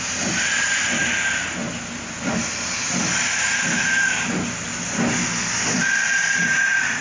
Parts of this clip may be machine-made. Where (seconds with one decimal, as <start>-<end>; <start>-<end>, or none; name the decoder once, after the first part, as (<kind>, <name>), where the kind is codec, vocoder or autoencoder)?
none